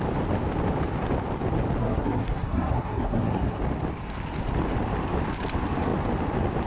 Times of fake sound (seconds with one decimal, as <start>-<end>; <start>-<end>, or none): 1.8-3.6

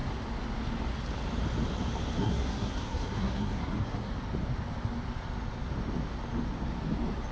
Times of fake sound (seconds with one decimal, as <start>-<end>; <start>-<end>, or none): 2.2-4.1

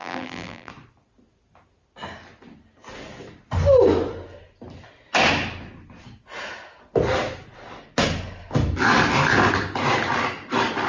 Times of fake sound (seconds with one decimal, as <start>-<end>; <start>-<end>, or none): 0.0-0.7

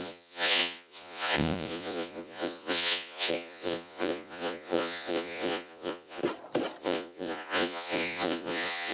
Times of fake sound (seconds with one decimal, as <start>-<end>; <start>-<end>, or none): 0.0-6.2; 6.8-8.9

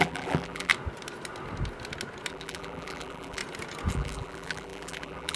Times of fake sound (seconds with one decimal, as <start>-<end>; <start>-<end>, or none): 0.0-0.7; 2.3-3.4; 3.9-5.4